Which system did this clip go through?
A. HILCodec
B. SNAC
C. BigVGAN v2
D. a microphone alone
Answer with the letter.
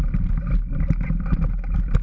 D